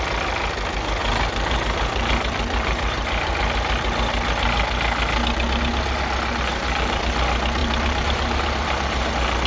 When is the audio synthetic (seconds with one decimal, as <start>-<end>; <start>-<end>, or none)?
1.0-3.3; 6.5-7.1; 7.6-9.1